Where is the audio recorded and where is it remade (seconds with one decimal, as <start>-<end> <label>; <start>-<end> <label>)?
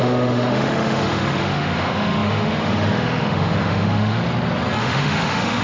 0.0-4.2 remade; 4.2-4.8 recorded; 4.8-5.6 remade